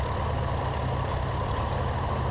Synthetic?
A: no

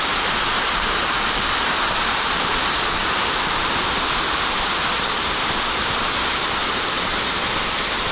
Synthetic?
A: no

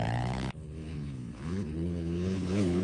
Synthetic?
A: yes